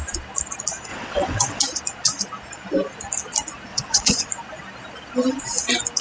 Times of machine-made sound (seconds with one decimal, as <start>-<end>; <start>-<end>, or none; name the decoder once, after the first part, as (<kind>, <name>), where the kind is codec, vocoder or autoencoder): 0.9-1.6 (vocoder, WaveNeXt); 3.7-4.3